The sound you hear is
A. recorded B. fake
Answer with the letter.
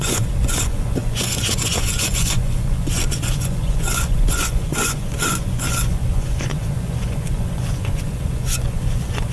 B